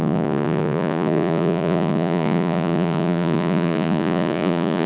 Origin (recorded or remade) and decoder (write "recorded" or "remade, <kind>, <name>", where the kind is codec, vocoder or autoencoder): remade, vocoder, Vocos